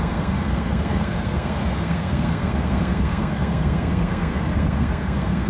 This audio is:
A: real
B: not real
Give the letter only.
B